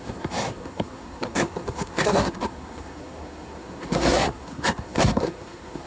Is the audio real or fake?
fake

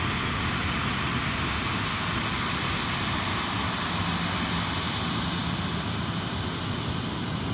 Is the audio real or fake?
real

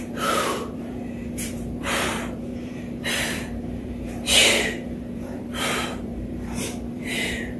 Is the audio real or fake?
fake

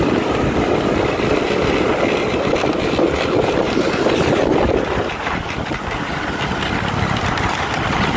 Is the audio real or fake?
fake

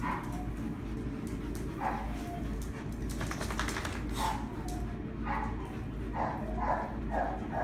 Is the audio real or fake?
real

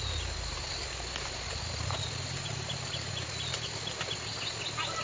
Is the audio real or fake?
real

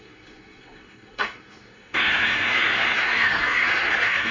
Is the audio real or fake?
fake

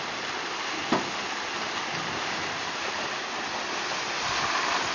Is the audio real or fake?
real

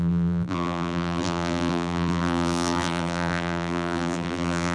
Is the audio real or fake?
fake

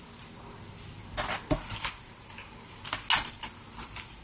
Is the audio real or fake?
real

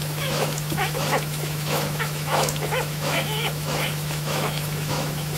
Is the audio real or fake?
fake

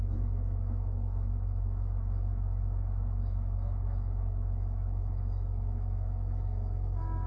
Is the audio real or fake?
fake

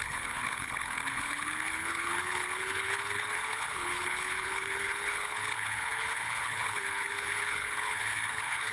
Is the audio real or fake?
fake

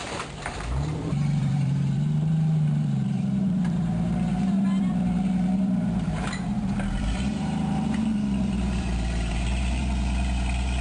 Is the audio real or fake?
fake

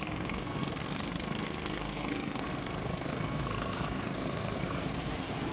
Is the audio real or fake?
fake